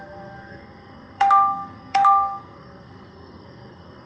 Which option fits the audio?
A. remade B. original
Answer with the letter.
A